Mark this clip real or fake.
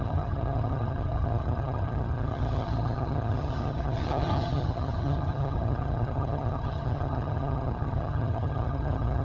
fake